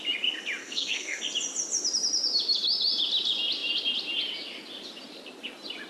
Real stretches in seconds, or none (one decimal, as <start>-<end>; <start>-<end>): 0.0-0.6; 1.2-5.9